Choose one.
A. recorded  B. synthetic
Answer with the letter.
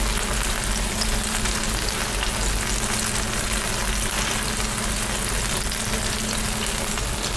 A